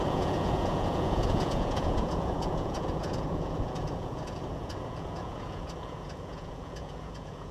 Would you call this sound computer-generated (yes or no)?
yes